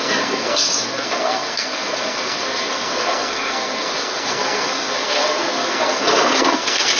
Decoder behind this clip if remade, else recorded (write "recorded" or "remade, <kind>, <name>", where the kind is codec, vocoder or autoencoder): remade, codec, SNAC